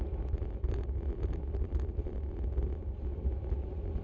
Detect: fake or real real